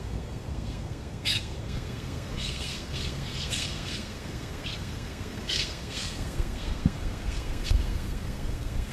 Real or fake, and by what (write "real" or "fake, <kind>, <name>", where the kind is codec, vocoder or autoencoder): fake, codec, SNAC